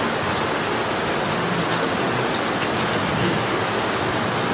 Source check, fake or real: real